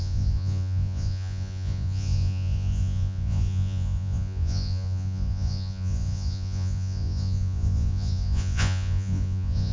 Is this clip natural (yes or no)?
no